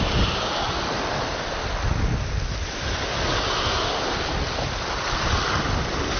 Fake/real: real